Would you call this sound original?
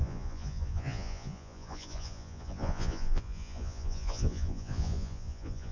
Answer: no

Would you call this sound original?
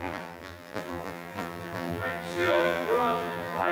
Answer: no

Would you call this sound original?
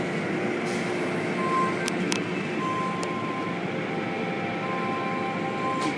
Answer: yes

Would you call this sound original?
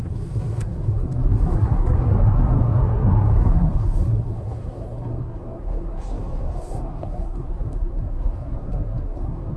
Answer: no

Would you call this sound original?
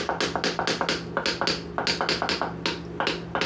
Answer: yes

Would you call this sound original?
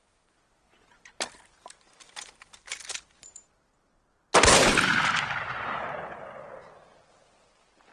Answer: yes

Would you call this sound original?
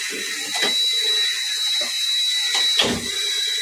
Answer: yes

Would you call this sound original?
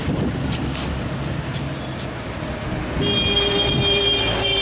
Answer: yes